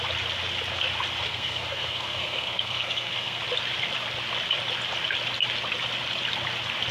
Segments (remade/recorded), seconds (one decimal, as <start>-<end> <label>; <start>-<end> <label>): 0.0-1.3 recorded; 1.3-3.4 remade; 3.4-6.9 recorded